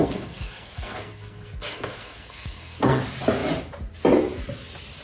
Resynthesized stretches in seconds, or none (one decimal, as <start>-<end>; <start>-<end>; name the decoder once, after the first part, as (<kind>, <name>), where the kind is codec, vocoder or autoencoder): 0.0-3.0 (codec, SNAC)